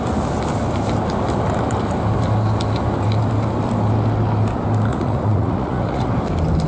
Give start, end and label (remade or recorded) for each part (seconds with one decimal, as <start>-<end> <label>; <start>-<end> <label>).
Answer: 0.0-4.9 recorded; 4.9-6.1 remade; 6.1-6.7 recorded